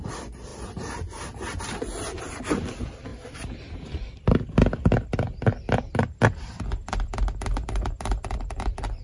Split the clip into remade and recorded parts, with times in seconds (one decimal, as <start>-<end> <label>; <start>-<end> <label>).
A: 0.0-9.0 recorded